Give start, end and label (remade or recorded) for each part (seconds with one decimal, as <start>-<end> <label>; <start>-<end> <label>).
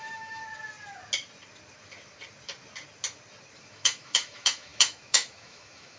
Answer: 0.0-0.4 remade; 0.4-3.6 recorded; 3.6-6.0 remade